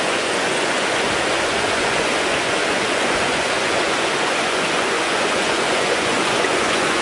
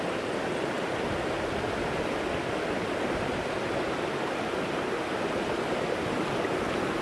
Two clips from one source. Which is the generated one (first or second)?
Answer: first